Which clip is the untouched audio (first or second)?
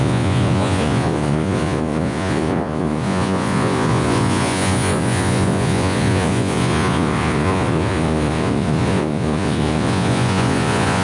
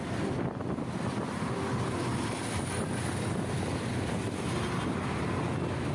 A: second